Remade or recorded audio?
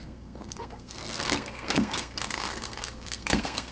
remade